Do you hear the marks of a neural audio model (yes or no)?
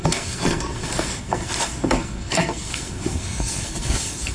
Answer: yes